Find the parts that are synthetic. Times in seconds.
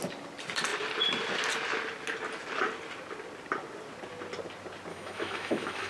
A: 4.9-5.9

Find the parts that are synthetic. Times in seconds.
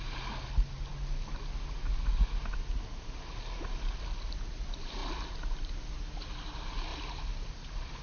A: 6.9-7.5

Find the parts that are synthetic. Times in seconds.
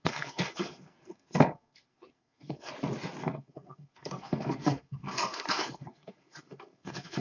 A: 0.0-2.7; 3.2-7.2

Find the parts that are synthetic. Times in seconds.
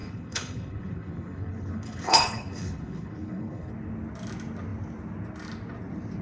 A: 0.0-3.7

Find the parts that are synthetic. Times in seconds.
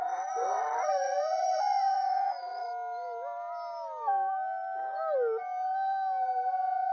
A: 0.0-2.7